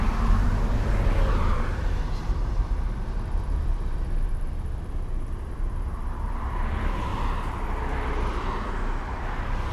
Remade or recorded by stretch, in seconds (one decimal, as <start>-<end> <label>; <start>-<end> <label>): 0.0-7.1 remade; 7.1-9.0 recorded; 9.0-9.7 remade